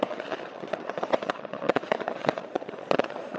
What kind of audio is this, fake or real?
fake